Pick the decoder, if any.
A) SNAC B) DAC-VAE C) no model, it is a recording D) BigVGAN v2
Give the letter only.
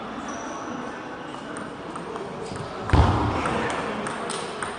C